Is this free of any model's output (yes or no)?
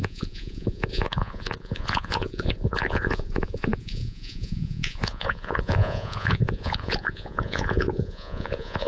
no